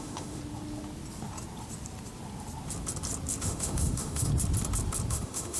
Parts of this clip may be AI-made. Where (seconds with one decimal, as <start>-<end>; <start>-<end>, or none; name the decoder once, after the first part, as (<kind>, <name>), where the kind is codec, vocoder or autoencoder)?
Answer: 0.0-0.4 (autoencoder, DAC-VAE); 3.4-4.3; 5.1-5.6